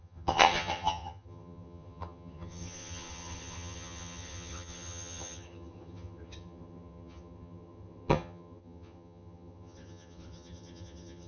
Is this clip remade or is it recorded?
remade